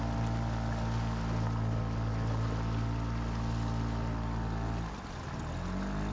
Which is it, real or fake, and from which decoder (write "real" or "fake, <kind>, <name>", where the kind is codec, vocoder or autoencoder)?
real